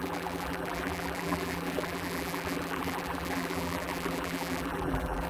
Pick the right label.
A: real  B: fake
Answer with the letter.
B